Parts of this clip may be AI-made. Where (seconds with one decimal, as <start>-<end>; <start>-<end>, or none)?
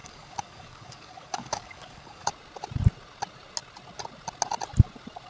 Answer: 0.0-2.3